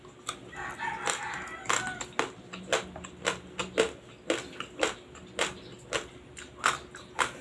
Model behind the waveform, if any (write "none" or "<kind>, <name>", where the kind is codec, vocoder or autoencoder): none